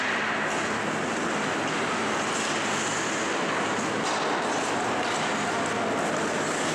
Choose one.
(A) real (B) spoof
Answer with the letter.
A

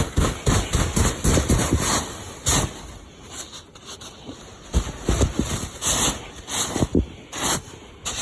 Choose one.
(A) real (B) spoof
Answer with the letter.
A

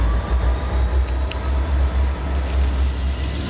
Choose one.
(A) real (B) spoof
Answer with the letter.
A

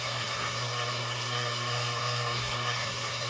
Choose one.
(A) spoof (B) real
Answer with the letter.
A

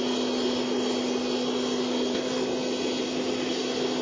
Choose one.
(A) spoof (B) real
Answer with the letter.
B